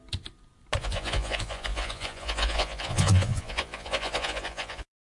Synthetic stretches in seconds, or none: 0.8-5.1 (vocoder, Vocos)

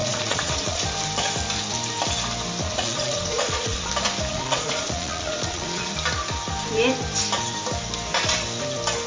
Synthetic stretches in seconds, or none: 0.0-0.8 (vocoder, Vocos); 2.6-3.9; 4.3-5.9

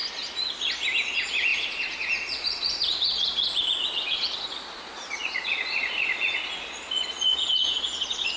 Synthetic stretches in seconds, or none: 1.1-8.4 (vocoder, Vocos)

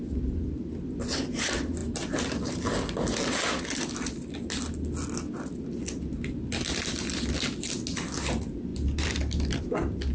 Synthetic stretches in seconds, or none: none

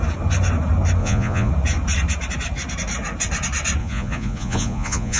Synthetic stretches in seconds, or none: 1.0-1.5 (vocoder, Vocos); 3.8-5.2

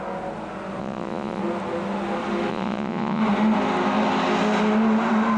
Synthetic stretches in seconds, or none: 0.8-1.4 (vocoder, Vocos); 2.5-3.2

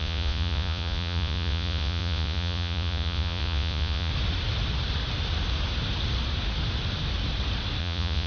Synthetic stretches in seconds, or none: 0.0-4.1 (vocoder, Vocos); 7.8-8.3

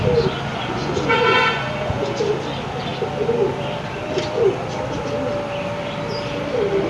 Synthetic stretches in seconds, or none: 0.5-2.2 (vocoder, Vocos)